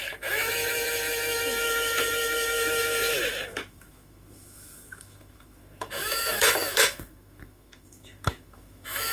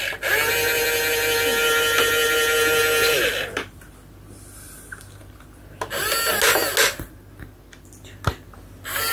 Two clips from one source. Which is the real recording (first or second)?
second